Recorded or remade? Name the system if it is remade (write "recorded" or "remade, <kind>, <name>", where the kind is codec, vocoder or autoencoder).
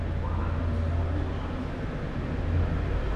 recorded